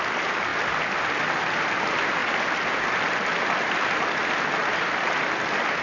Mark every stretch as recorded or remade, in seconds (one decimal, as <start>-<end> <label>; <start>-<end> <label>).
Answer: 0.0-5.8 recorded